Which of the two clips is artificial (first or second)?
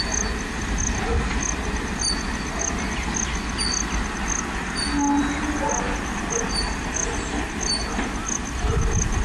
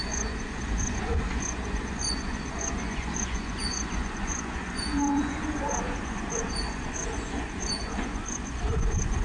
second